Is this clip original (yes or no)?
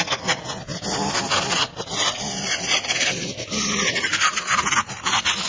yes